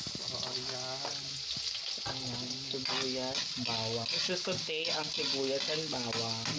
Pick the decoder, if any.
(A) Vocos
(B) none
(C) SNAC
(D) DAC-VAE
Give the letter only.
B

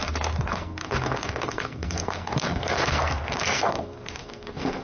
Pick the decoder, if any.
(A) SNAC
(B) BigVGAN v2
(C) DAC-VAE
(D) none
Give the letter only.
A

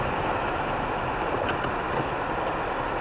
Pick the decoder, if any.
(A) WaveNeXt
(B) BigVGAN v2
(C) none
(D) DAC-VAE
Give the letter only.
C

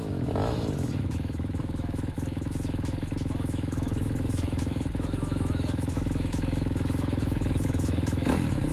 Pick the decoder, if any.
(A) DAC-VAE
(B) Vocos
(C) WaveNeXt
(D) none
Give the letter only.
A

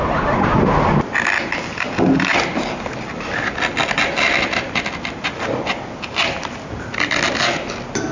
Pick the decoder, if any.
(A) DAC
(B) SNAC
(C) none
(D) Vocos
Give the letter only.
C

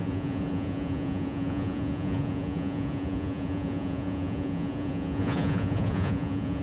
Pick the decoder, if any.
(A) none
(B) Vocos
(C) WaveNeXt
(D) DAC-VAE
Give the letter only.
B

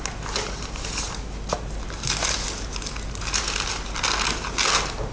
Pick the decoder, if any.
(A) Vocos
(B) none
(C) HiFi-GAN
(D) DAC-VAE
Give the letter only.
B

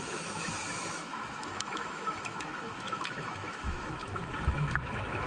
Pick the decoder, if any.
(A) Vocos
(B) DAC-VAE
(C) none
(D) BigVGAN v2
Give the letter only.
B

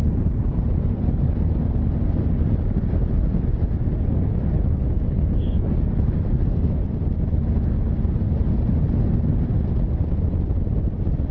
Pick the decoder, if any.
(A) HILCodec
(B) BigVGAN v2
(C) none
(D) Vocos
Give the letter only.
C